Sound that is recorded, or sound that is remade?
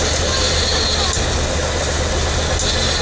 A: recorded